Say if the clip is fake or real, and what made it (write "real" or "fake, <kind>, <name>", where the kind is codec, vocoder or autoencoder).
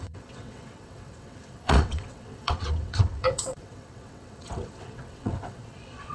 fake, vocoder, WaveNeXt